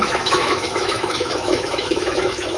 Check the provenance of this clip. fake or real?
fake